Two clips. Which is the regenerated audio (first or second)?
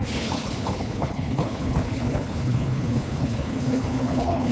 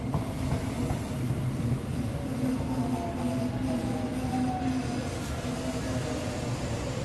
first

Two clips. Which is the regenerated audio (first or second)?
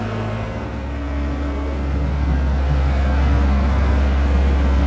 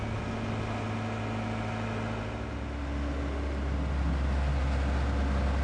first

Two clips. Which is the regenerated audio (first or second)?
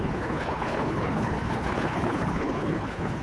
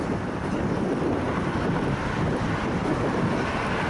first